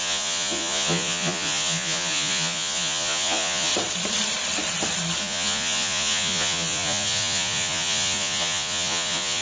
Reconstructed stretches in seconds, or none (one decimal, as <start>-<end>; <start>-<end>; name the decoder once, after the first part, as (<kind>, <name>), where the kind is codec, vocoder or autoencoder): 0.0-3.7 (vocoder, Vocos); 5.2-9.4

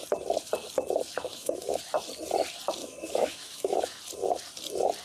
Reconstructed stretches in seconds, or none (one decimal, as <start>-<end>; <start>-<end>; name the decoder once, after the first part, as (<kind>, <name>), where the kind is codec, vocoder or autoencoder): 1.3-1.8 (autoencoder, DAC-VAE); 2.8-4.0

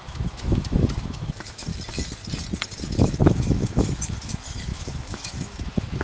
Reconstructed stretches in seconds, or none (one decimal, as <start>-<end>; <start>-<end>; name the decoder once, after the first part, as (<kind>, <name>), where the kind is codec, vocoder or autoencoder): 0.0-1.7 (autoencoder, DAC-VAE); 2.8-6.0

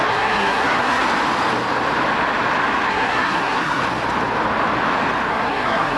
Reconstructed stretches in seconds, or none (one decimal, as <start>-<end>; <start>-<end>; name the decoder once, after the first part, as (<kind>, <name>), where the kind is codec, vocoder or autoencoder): 0.0-1.0 (codec, SNAC); 2.9-3.8; 5.3-6.0

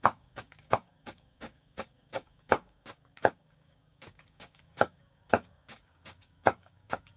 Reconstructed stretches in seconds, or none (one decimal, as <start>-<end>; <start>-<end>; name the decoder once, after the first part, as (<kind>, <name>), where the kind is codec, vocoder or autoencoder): 0.0-7.2 (codec, DAC)

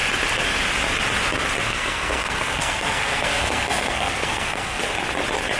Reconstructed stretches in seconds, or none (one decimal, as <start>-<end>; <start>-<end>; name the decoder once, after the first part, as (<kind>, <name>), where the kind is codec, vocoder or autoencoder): 1.7-4.8 (codec, SNAC)

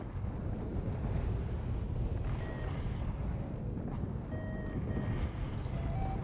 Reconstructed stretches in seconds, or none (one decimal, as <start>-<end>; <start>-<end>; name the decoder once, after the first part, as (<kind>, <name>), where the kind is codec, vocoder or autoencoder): none